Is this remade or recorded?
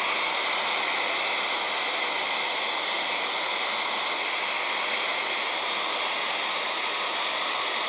recorded